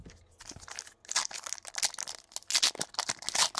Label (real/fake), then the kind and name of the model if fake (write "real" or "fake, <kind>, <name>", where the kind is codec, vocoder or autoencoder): real